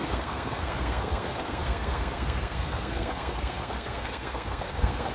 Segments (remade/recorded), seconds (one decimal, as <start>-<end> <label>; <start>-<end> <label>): 0.0-5.1 remade